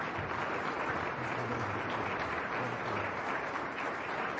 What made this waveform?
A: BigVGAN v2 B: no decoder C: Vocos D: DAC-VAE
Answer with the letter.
A